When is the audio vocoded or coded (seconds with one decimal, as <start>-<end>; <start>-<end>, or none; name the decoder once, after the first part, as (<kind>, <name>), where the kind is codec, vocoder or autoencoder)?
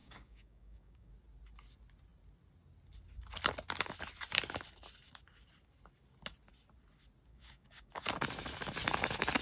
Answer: 0.0-1.1 (codec, DAC); 7.3-7.9